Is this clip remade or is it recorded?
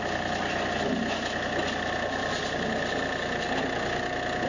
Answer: recorded